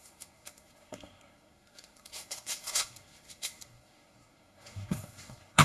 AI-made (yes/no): yes